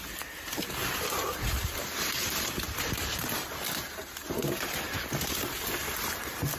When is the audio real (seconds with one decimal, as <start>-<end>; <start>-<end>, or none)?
0.0-0.8; 4.8-6.6

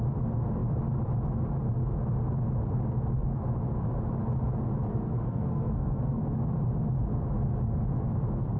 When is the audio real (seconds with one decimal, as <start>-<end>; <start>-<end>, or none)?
0.0-4.9; 6.2-8.6

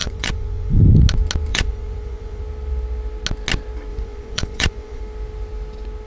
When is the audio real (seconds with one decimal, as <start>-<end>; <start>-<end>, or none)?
0.8-1.5; 2.4-3.9; 5.0-6.1

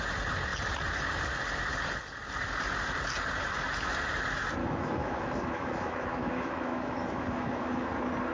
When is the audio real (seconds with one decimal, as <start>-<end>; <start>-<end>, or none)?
0.0-4.6; 7.9-8.3

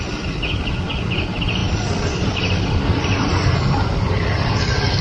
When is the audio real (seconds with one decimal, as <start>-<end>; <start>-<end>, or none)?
0.0-1.6; 4.6-5.0